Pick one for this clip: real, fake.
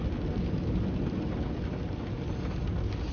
real